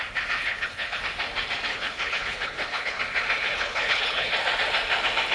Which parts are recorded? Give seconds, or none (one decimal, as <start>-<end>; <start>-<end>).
0.0-0.4; 1.0-1.7; 3.0-3.4; 4.3-5.3